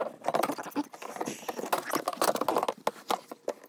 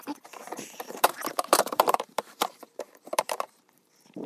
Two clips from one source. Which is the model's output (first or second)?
second